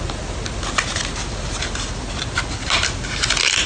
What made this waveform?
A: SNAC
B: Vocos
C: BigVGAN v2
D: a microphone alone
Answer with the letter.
D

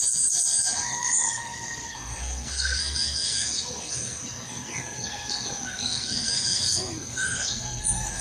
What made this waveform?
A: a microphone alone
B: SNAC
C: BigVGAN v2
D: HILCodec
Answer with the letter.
B